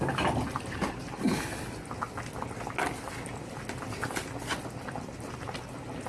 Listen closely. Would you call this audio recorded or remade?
recorded